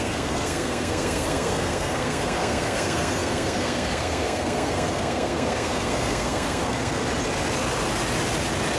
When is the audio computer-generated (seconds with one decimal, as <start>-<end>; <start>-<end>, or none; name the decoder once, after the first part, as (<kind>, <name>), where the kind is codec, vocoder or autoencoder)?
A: 0.0-7.0 (codec, SNAC)